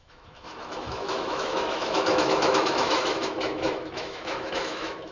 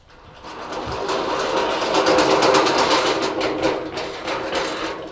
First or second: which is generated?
first